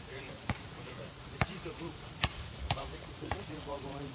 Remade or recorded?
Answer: remade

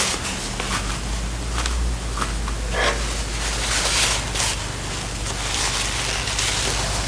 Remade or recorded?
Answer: recorded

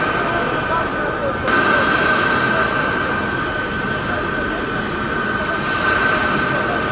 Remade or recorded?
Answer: recorded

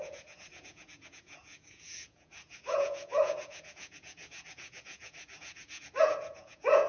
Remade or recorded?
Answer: remade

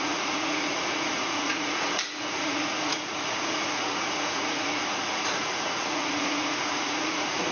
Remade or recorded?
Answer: remade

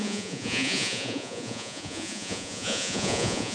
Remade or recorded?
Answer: remade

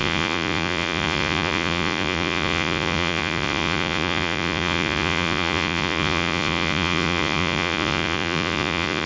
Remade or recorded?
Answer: remade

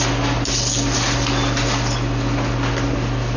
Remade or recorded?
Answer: recorded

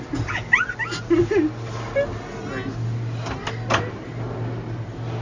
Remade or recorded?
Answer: recorded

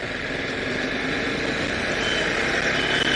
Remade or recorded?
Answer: recorded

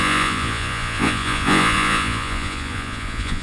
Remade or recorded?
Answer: remade